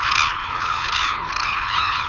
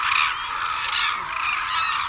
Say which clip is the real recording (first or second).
second